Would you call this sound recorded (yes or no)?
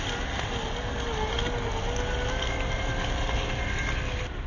yes